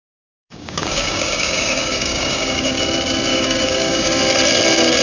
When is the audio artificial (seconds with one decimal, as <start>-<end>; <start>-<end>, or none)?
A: 0.4-2.8; 3.3-4.2